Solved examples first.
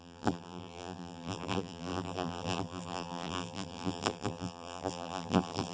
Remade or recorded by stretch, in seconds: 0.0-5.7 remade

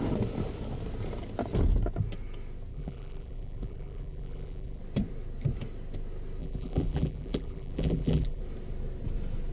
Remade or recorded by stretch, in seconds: 0.0-2.7 recorded; 2.7-4.8 remade; 4.8-6.4 recorded; 6.4-8.4 remade; 8.4-9.5 recorded

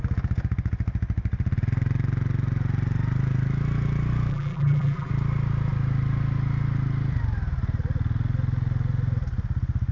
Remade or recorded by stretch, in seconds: 0.0-4.3 recorded; 4.3-5.1 remade; 5.1-9.9 recorded

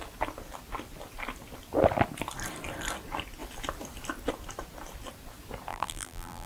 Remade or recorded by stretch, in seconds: 0.0-5.7 recorded; 5.7-6.5 remade

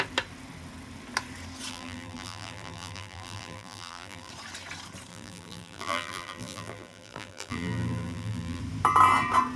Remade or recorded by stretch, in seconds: 0.0-1.7 recorded; 1.7-4.3 remade; 4.3-5.1 recorded; 5.1-8.6 remade; 8.6-9.6 recorded

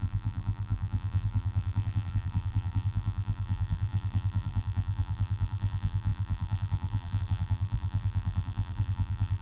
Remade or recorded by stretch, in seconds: 0.0-9.4 remade

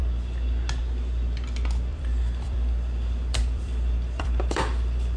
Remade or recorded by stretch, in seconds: 0.0-1.9 recorded; 1.9-5.2 remade